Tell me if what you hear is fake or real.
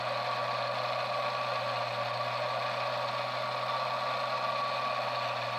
real